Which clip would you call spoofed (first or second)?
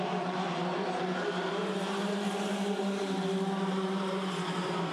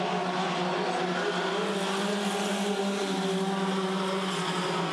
first